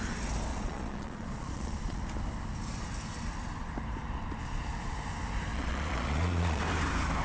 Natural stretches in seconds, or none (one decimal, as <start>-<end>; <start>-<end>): 0.0-0.5; 2.0-5.5; 6.6-7.2